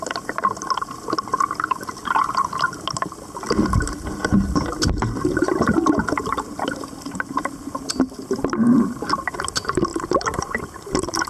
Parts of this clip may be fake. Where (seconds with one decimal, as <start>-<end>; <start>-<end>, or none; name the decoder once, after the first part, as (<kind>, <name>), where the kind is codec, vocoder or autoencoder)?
9.9-11.3 (vocoder, BigVGAN v2)